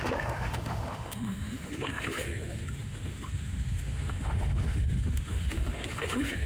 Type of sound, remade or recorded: remade